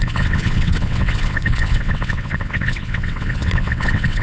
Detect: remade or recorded remade